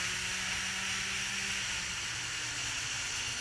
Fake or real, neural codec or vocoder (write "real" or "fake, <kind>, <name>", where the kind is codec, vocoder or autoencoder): real